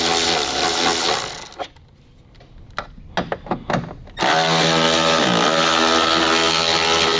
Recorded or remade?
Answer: recorded